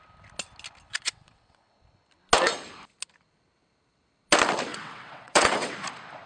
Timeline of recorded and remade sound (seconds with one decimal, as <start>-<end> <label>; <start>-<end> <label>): 0.0-0.9 recorded; 0.9-1.7 remade; 1.7-4.7 recorded; 4.7-5.7 remade; 5.7-6.3 recorded